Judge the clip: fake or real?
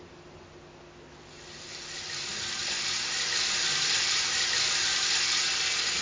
real